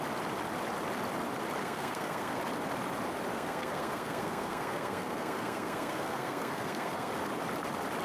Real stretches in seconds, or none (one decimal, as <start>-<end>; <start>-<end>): 0.0-1.6; 2.4-3.3; 7.1-8.0